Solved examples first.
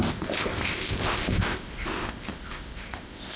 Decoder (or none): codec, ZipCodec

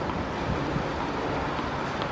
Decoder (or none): none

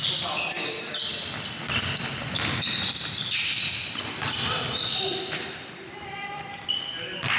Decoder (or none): vocoder, BigVGAN v2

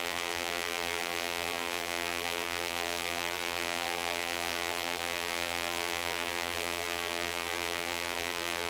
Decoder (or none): vocoder, BigVGAN v2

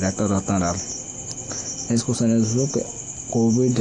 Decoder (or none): none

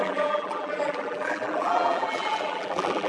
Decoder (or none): vocoder, BigVGAN v2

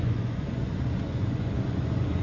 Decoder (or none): vocoder, Vocos